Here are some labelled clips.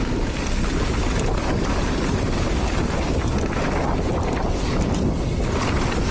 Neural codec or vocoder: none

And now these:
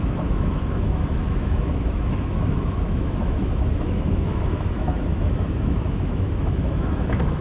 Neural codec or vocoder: autoencoder, DAC-VAE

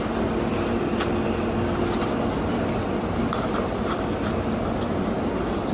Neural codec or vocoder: none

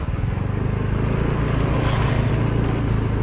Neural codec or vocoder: none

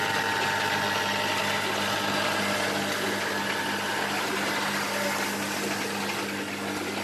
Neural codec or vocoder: none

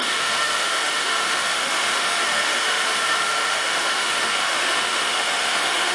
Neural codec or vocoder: autoencoder, DAC-VAE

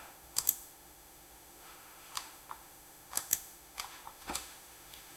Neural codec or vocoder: autoencoder, DAC-VAE